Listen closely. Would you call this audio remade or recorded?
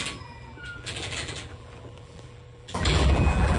remade